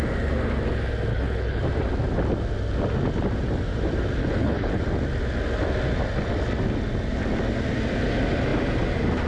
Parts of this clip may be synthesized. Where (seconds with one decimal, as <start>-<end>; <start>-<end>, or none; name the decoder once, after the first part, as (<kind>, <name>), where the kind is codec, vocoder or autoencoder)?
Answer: 1.1-1.6 (codec, HILCodec); 4.2-4.8